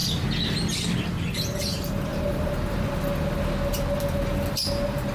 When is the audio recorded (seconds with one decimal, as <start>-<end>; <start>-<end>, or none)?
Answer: 0.0-2.1; 2.9-5.1